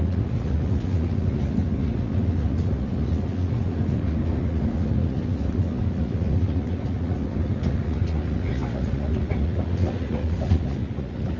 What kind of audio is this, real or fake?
fake